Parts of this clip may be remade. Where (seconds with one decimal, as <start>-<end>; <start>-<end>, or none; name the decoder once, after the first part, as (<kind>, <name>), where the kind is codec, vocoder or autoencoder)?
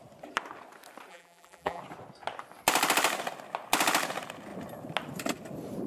1.1-1.8 (vocoder, BigVGAN v2)